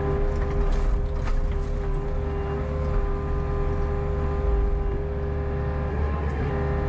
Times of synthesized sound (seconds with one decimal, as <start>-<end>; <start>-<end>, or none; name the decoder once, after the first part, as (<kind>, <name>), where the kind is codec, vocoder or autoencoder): 5.9-6.5 (codec, SNAC)